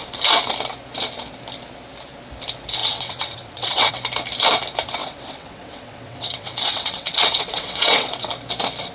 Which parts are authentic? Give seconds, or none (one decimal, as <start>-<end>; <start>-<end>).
0.0-2.8; 3.9-5.0; 8.3-8.9